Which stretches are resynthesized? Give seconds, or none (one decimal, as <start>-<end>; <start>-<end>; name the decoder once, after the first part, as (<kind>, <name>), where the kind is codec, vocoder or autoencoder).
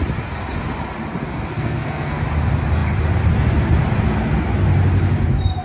1.3-2.2 (codec, SNAC)